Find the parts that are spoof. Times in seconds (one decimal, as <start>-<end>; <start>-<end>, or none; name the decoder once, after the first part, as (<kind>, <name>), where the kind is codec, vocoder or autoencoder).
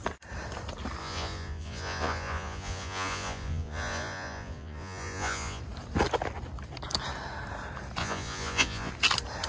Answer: 1.0-5.6 (vocoder, Vocos); 8.0-8.9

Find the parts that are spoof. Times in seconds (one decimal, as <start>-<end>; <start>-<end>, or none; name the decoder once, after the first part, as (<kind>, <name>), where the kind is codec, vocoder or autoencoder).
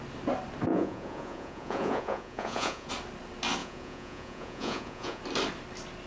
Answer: 0.7-2.9 (vocoder, Vocos); 3.6-5.2